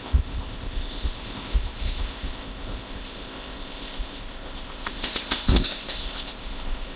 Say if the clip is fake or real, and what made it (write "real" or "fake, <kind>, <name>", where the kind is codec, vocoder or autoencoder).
fake, codec, ZipCodec